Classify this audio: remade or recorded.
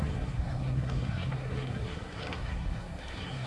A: remade